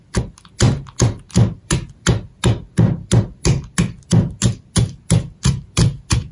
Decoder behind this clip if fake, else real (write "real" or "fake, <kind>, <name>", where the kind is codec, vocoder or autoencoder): real